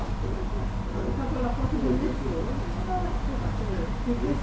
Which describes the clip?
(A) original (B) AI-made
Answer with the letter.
A